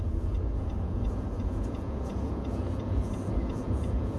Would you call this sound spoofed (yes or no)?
yes